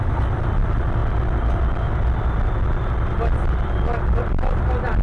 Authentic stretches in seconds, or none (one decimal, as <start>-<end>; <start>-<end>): 0.0-5.0